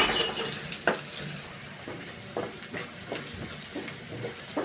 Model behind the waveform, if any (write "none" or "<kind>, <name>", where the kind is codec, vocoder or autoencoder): none